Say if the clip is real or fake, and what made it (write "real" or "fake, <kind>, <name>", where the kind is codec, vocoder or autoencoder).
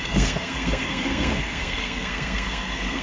fake, codec, SNAC